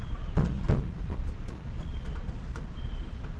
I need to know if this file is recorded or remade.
remade